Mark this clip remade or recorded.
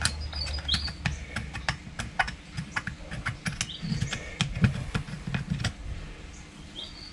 recorded